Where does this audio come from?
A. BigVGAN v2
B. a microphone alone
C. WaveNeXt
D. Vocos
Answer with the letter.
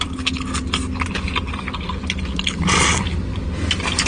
B